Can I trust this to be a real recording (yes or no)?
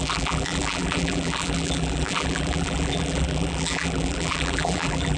no